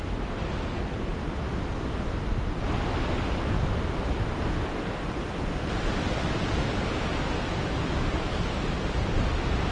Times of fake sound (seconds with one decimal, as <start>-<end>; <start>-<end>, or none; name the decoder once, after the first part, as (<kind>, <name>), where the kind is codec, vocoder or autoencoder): none